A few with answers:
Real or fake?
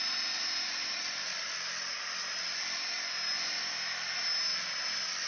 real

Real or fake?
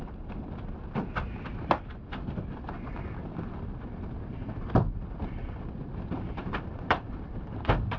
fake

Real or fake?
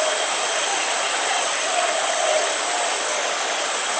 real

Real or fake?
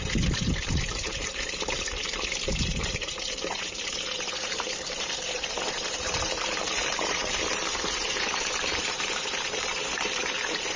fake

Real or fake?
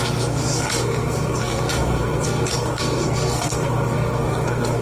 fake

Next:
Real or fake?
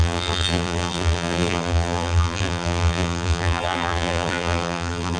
fake